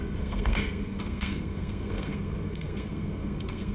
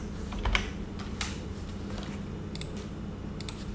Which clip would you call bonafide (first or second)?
second